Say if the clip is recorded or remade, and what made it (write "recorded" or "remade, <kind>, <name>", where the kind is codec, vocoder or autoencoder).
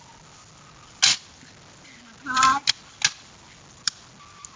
recorded